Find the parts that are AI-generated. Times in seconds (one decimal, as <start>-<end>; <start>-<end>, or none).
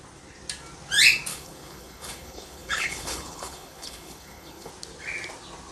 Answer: 1.3-4.7